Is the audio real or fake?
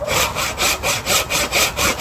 real